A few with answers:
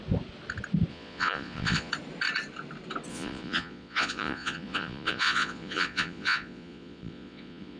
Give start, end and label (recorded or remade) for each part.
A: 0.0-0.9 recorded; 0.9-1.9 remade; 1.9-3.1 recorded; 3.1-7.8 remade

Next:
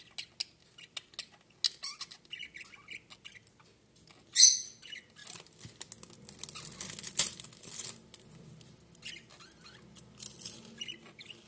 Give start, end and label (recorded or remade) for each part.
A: 0.0-11.5 recorded

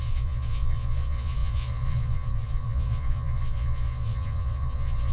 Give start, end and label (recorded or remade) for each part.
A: 0.0-5.1 remade